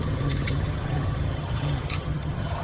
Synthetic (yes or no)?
yes